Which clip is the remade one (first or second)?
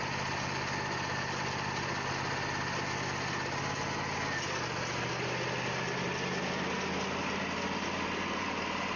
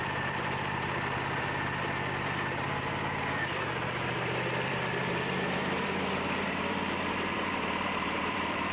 second